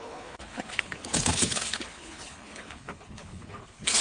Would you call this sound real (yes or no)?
no